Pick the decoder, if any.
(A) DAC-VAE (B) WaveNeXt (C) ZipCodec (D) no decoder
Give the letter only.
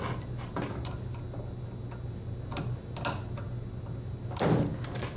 D